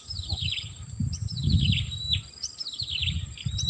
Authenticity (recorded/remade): recorded